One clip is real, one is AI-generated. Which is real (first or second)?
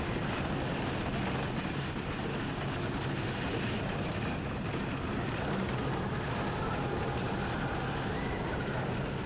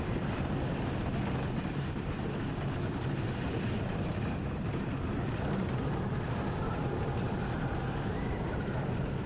first